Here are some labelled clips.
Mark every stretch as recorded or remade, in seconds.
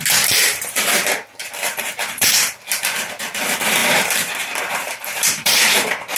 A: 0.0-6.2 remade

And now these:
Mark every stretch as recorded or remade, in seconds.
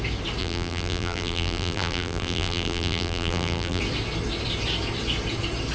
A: 0.0-0.4 recorded; 0.4-3.8 remade; 3.8-5.7 recorded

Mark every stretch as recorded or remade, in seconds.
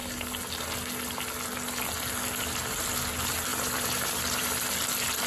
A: 0.0-3.5 recorded; 3.5-4.4 remade; 4.4-5.3 recorded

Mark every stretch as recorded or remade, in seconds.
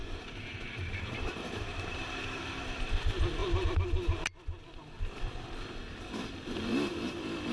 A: 0.0-2.8 remade; 2.8-7.5 recorded